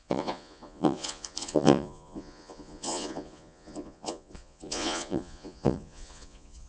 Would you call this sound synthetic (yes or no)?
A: yes